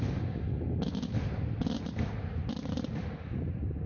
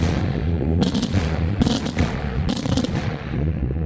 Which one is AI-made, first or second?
second